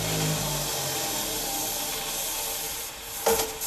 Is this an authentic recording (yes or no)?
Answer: yes